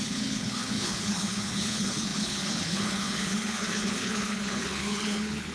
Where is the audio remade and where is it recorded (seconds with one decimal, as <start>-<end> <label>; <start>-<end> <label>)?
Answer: 0.0-5.5 remade